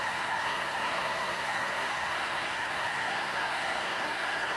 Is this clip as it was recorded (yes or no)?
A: no